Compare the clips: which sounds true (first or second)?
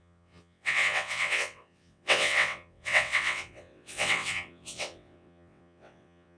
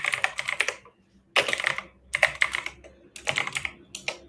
second